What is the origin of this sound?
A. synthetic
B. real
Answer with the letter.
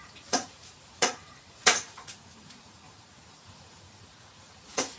A